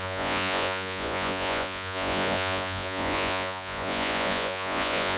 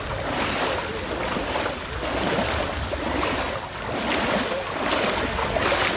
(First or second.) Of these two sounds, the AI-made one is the first